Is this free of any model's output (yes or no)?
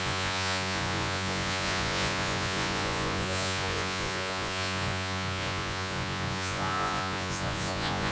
no